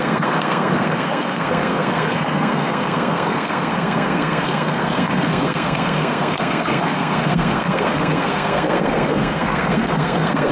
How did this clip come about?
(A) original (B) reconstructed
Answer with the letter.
B